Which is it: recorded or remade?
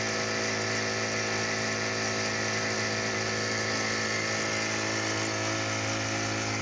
recorded